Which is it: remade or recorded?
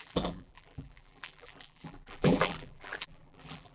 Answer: remade